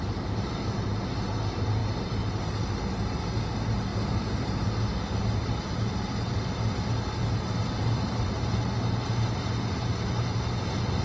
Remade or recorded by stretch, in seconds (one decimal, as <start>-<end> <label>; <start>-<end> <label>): 0.0-11.0 recorded